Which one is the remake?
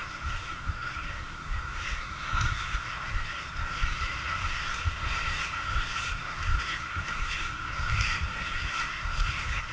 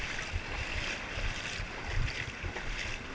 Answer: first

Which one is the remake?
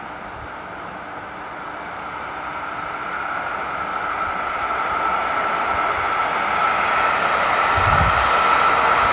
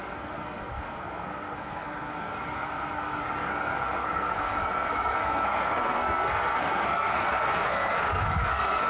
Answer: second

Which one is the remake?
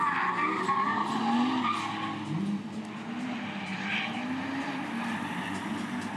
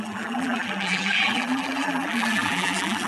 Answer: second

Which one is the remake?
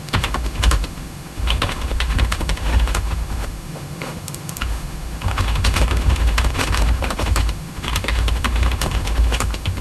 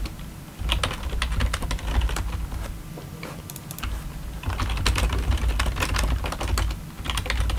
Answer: first